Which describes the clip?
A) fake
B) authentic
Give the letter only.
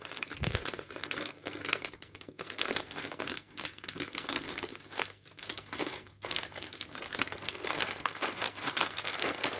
A